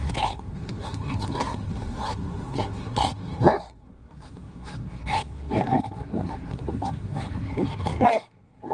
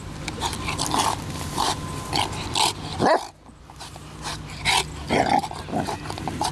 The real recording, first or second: second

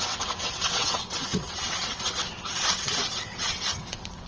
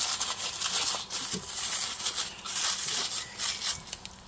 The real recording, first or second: second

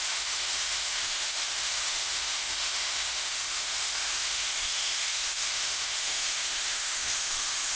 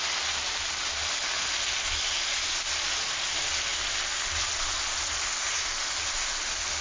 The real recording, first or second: second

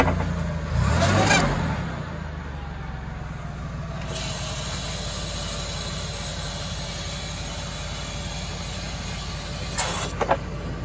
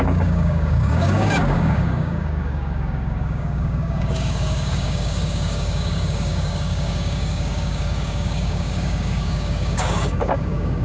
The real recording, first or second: first